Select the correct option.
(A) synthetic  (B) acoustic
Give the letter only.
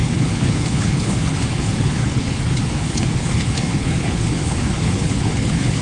A